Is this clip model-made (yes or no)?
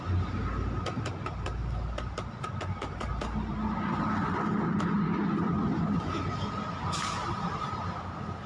no